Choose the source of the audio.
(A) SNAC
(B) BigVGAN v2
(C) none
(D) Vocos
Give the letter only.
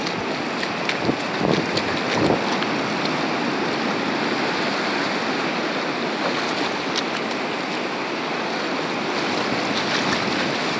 C